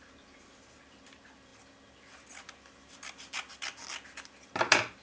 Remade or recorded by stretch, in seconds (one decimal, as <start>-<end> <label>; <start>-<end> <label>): 0.0-5.0 recorded